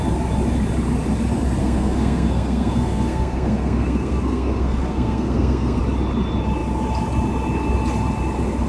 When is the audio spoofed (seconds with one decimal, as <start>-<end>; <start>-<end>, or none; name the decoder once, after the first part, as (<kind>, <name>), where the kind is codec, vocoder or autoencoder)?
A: 1.6-5.8 (codec, SNAC)